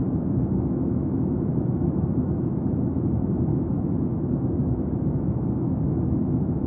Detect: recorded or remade remade